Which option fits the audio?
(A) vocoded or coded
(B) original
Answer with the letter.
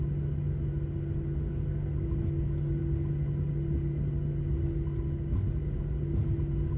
B